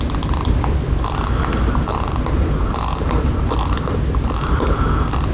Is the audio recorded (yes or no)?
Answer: yes